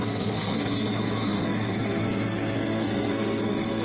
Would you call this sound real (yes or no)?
no